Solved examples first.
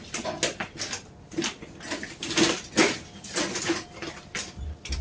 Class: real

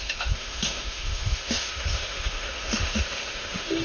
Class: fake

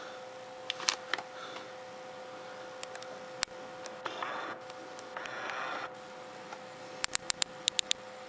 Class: real